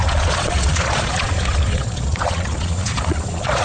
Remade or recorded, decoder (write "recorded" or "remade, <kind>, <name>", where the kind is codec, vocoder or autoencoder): remade, vocoder, Vocos